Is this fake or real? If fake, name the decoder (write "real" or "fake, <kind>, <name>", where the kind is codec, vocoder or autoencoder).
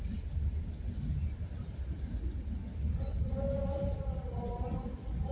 real